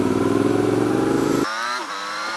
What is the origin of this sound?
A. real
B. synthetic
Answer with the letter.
B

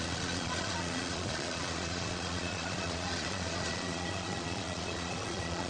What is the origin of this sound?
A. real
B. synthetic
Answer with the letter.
B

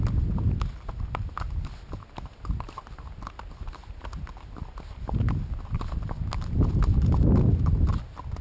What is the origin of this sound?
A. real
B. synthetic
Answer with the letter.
A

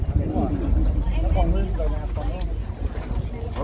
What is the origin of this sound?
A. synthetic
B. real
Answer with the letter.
B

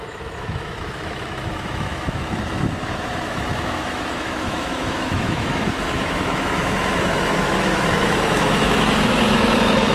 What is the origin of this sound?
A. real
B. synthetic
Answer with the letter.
B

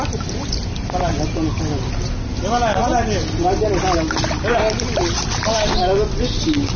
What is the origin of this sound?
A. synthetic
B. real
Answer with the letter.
B